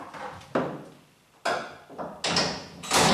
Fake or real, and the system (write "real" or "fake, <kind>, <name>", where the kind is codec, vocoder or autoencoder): real